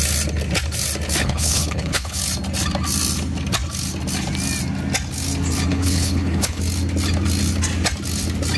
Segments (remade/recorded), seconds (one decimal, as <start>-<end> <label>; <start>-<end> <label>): 0.0-1.2 recorded; 1.2-2.2 remade; 2.2-5.7 recorded; 5.7-6.6 remade; 6.6-8.6 recorded